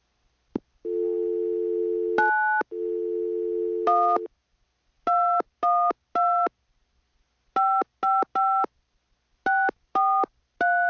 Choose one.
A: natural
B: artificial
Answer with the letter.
A